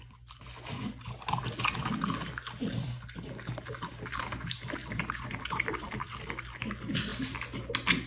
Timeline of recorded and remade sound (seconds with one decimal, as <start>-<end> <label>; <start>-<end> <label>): 0.0-4.8 recorded; 4.8-6.0 remade; 6.0-8.1 recorded